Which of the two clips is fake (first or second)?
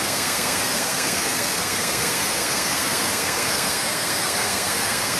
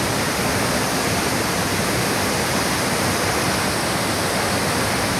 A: first